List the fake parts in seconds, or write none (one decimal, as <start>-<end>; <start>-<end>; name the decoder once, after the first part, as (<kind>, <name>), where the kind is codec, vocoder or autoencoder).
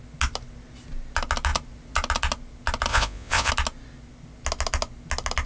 2.9-3.5 (vocoder, Vocos)